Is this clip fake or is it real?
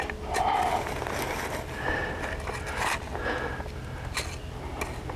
real